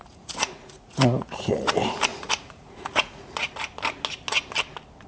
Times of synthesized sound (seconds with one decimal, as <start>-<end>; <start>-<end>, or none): 0.0-1.7; 2.1-3.5